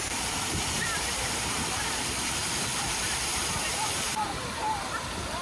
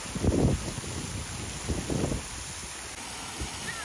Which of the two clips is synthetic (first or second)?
first